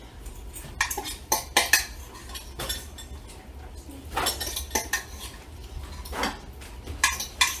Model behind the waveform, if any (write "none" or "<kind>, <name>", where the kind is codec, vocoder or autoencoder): none